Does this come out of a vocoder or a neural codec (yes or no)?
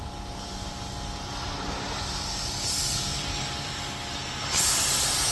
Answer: no